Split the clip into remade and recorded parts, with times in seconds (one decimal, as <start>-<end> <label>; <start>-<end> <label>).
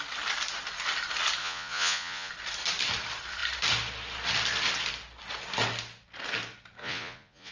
0.0-1.4 recorded; 1.4-2.3 remade; 2.3-6.8 recorded; 6.8-7.5 remade